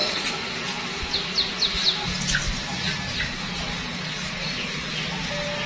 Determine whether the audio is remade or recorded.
recorded